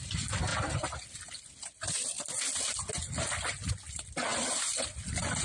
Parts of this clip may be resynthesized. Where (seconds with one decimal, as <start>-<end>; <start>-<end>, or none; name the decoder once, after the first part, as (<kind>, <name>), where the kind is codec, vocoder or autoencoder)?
none